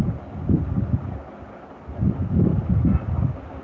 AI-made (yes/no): no